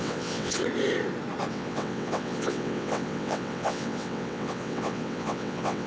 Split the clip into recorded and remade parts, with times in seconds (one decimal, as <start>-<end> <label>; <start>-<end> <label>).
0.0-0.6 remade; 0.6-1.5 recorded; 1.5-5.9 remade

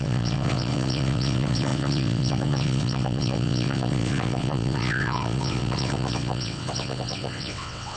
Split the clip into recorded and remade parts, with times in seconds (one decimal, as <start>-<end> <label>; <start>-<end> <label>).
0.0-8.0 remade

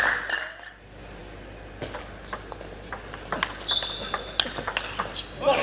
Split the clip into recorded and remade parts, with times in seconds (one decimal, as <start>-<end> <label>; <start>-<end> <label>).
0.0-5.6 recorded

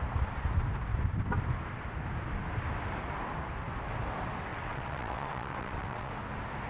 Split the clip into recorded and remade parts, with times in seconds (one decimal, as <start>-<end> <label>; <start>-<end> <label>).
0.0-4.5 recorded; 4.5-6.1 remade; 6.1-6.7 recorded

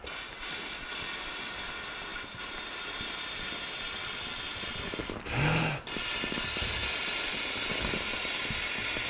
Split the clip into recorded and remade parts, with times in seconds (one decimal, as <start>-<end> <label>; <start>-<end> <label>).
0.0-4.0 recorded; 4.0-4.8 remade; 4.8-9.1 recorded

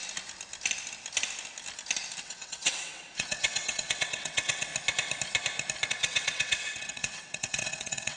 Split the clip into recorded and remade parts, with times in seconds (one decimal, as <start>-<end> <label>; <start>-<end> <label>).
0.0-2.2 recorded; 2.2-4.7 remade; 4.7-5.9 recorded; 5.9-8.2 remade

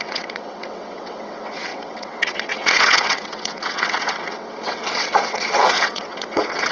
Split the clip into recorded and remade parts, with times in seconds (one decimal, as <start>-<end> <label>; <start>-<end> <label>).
0.0-6.7 remade

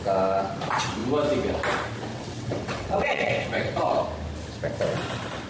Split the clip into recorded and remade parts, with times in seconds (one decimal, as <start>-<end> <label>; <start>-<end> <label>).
0.0-2.1 recorded; 2.1-4.0 remade; 4.0-5.5 recorded